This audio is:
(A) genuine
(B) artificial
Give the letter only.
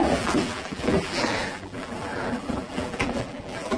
B